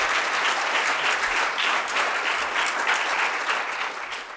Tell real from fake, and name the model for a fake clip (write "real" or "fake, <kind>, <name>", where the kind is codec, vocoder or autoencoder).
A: real